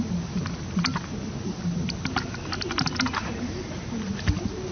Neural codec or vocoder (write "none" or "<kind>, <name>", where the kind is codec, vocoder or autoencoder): none